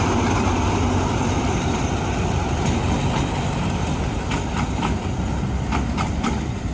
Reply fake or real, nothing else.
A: fake